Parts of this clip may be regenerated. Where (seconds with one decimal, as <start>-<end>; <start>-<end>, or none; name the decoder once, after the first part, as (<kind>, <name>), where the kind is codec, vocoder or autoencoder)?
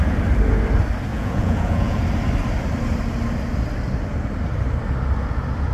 1.1-2.0 (vocoder, Vocos)